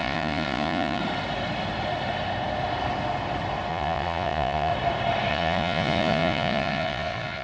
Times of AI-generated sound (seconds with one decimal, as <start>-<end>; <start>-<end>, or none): 0.0-1.0; 3.7-4.7; 5.3-7.4